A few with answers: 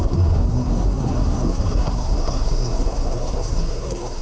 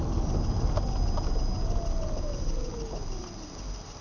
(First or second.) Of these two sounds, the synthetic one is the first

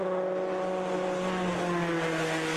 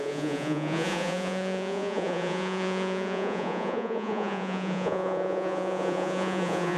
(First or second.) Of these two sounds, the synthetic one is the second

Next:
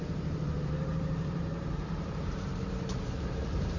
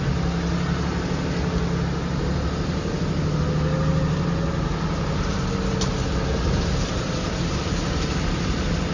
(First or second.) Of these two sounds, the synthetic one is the first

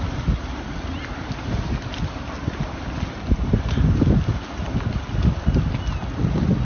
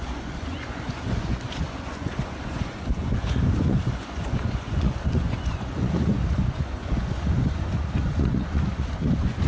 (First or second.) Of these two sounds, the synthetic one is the second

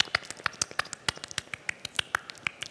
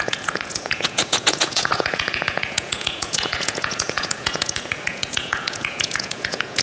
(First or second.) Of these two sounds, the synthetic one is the second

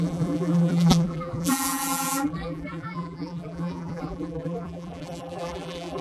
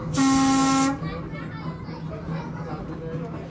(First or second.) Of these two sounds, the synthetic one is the first